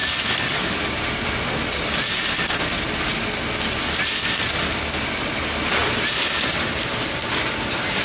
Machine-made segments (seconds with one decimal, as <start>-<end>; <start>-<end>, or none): 0.0-1.9; 5.8-6.7